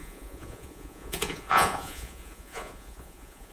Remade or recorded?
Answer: remade